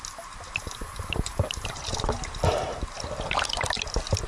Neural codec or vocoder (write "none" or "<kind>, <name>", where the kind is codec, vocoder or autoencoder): none